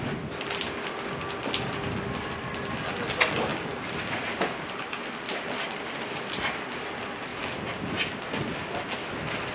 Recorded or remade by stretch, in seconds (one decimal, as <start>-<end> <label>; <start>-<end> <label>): 0.0-9.5 recorded